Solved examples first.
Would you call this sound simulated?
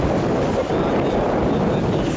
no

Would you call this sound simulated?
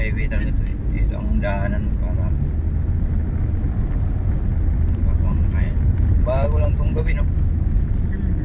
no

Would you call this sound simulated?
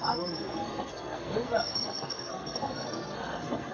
yes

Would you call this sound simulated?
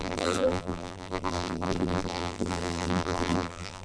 yes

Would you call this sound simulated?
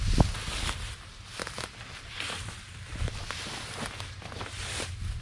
no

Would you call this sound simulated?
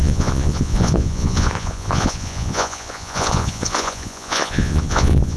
yes